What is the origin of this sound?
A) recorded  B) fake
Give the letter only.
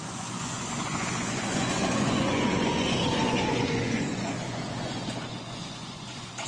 B